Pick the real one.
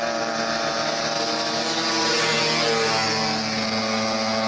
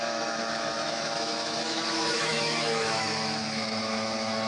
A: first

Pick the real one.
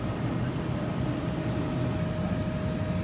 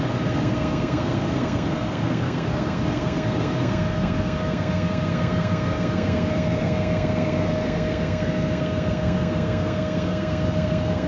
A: first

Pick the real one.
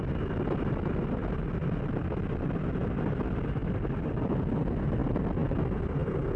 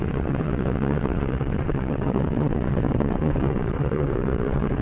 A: first